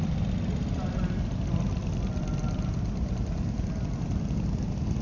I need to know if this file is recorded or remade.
recorded